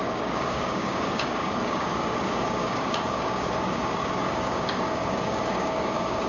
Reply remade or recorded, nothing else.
remade